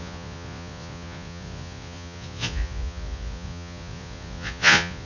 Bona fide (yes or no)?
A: no